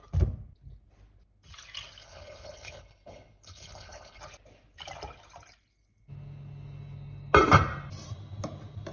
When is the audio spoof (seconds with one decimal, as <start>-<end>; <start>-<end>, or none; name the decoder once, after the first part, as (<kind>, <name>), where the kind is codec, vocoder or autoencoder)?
2.0-4.2 (codec, HILCodec)